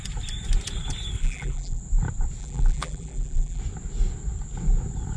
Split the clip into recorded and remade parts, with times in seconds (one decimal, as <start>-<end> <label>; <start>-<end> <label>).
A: 0.0-1.2 recorded; 1.2-1.8 remade; 1.8-2.4 recorded; 2.4-3.6 remade; 3.6-5.2 recorded